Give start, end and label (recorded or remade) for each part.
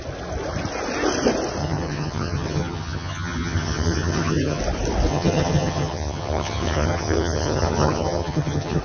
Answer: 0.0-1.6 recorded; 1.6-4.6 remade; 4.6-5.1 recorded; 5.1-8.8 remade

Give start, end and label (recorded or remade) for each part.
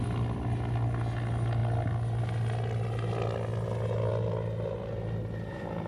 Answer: 0.0-5.9 recorded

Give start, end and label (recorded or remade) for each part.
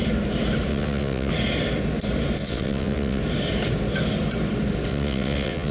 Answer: 0.0-0.7 recorded; 0.7-1.3 remade; 1.3-2.4 recorded; 2.4-3.2 remade; 3.2-4.9 recorded; 4.9-5.7 remade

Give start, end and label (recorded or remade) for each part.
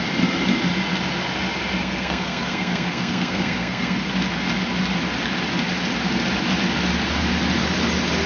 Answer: 0.0-1.8 recorded; 1.8-4.1 remade; 4.1-8.3 recorded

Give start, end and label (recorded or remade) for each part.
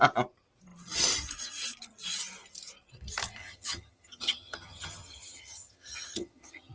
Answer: 0.0-3.4 recorded; 3.4-6.7 remade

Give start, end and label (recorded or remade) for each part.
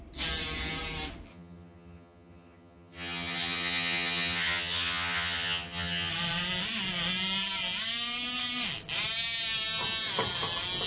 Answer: 0.0-1.3 recorded; 1.3-6.1 remade; 6.1-10.9 recorded